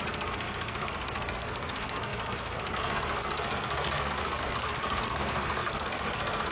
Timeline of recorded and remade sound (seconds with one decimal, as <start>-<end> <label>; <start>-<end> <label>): 0.0-6.5 remade